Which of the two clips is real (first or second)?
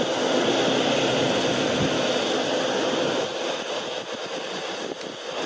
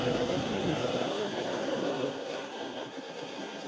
first